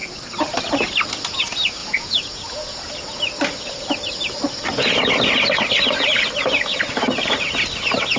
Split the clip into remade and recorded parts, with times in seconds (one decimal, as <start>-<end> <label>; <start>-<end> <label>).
0.0-1.8 recorded; 1.8-2.9 remade; 2.9-8.2 recorded